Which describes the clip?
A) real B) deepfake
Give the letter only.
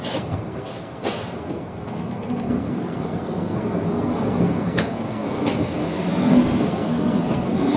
B